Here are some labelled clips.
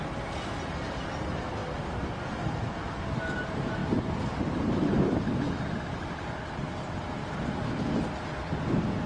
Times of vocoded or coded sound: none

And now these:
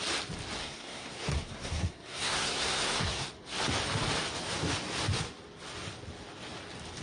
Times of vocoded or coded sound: 0.6-3.3 (codec, SNAC)

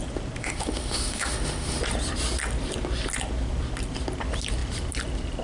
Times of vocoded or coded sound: 0.4-1.8 (autoencoder, DAC-VAE)